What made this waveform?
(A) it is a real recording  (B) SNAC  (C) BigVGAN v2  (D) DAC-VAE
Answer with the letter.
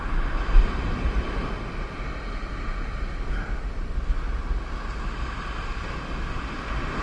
A